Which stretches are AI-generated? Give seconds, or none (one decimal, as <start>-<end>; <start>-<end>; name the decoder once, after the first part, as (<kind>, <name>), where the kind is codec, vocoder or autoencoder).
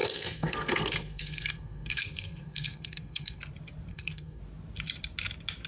0.0-3.4 (codec, SNAC); 3.9-4.4